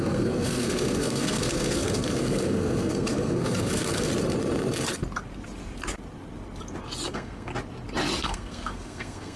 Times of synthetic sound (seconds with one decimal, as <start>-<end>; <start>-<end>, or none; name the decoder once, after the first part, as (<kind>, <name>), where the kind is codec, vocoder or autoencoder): 0.0-4.1 (codec, SNAC); 7.1-7.5; 8.2-9.4